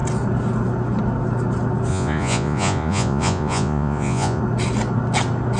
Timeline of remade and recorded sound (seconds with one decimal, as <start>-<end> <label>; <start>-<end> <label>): 0.0-1.9 recorded; 1.9-4.4 remade; 4.4-5.6 recorded